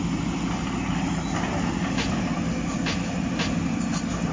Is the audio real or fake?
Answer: real